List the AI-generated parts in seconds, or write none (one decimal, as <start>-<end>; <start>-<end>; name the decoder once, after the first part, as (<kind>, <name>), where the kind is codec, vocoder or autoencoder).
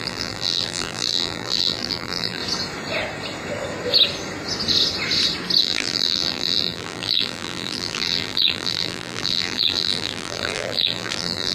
0.0-2.4 (vocoder, BigVGAN v2); 5.6-11.5